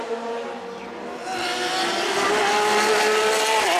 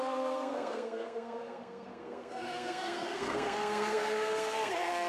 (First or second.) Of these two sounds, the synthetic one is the second